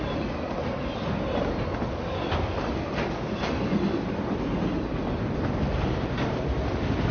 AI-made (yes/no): no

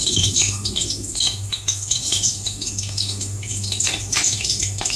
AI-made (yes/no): yes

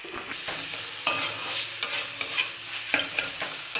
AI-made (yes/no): no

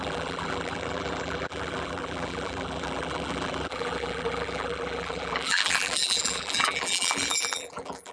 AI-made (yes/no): yes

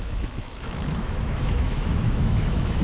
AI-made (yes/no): yes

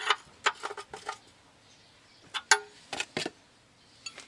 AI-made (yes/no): no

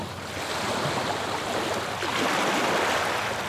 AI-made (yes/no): no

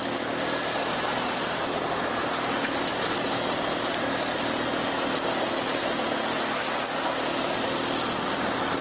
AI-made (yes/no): no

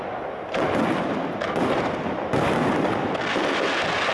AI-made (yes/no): no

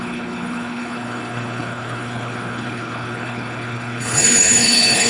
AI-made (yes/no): yes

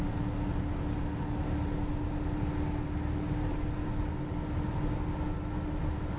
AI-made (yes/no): no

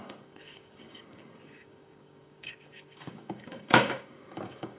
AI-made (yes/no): yes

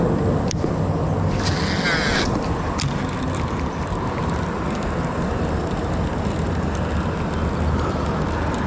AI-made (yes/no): no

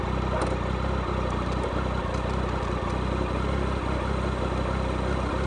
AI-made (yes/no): no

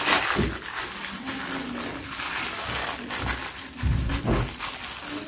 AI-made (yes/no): no